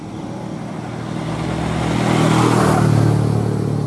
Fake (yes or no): no